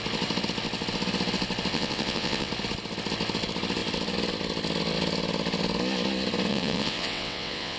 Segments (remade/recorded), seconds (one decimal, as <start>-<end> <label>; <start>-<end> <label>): 0.0-1.7 recorded; 1.7-2.5 remade; 2.5-6.5 recorded; 6.5-7.8 remade